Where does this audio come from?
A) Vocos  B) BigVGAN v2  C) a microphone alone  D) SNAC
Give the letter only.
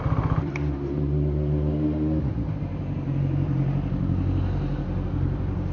C